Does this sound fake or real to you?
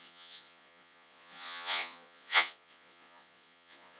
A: fake